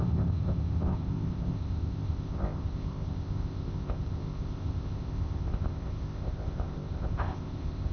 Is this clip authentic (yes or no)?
no